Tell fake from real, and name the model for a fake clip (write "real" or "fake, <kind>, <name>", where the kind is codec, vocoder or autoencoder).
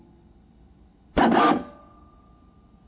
real